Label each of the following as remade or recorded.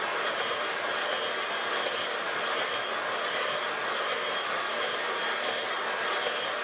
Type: recorded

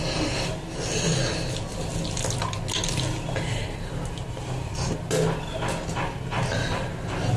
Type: recorded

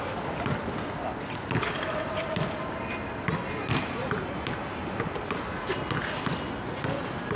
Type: recorded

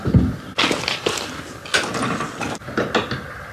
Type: recorded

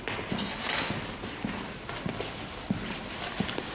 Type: recorded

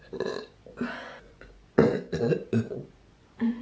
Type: remade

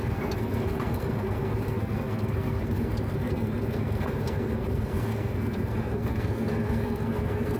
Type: remade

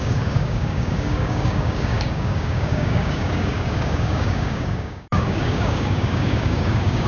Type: remade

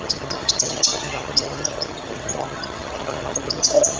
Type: remade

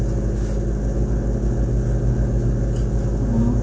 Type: recorded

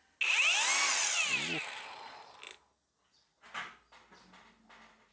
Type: recorded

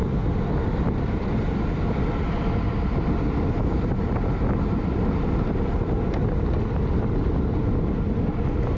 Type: recorded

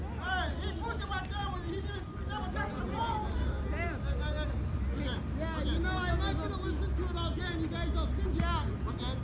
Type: recorded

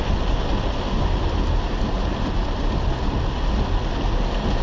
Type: recorded